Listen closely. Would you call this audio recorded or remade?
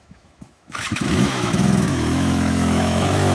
remade